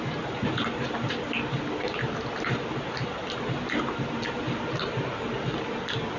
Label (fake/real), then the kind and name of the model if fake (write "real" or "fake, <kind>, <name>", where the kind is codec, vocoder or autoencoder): real